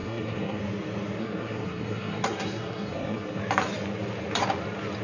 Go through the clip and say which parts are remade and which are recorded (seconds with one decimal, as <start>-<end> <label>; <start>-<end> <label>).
0.0-0.6 remade; 0.6-1.2 recorded; 1.2-3.4 remade; 3.4-5.0 recorded